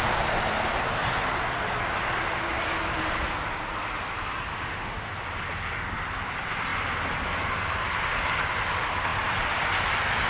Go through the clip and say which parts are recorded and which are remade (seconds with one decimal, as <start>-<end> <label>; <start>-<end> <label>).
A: 0.0-4.5 recorded; 4.5-5.1 remade; 5.1-10.3 recorded